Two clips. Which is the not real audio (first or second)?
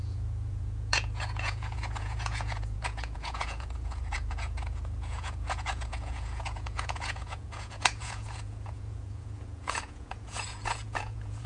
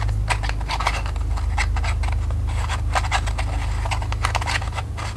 first